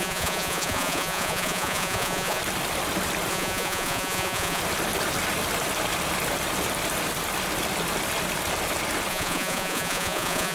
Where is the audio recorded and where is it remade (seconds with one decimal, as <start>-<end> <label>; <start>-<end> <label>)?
0.0-2.4 remade; 2.4-3.3 recorded; 3.3-4.6 remade; 4.6-9.1 recorded; 9.1-10.5 remade